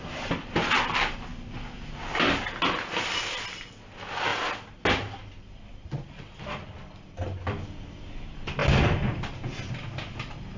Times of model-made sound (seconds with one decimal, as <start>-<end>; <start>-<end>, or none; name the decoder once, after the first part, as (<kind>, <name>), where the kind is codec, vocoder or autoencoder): none